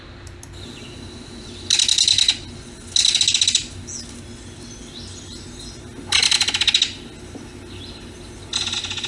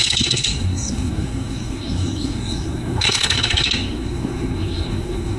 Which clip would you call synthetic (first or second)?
second